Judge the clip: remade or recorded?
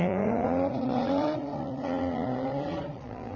remade